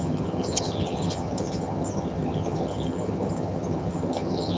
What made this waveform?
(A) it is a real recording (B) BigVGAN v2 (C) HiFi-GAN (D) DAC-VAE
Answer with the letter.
C